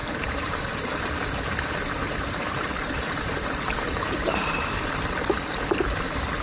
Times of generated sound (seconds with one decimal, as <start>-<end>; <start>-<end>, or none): 0.0-1.1; 2.0-4.6